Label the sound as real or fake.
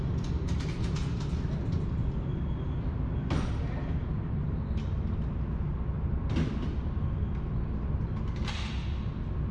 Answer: real